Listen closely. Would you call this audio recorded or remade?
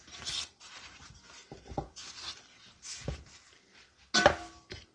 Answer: recorded